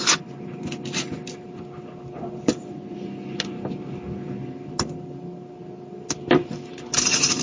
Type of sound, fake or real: real